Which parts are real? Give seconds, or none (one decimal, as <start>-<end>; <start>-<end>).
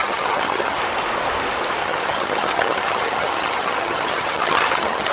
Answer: 0.8-1.8